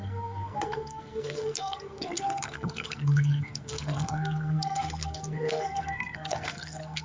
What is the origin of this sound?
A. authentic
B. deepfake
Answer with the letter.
B